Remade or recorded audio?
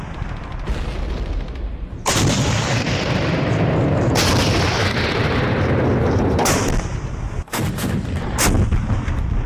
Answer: recorded